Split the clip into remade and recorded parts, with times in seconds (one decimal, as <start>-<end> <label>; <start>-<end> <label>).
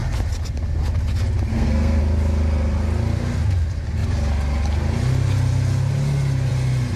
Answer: 0.0-1.5 recorded; 1.5-2.0 remade; 2.0-7.0 recorded